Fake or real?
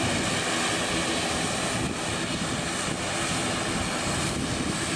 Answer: real